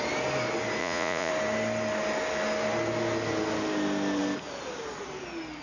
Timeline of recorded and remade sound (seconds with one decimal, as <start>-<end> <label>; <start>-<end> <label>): 0.0-0.8 recorded; 0.8-1.3 remade; 1.3-5.6 recorded